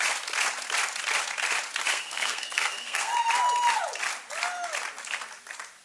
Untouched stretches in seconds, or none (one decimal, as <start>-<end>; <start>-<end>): 0.0-1.9; 3.1-5.8